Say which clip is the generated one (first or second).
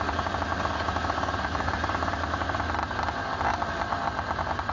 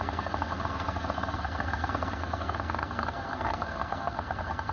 second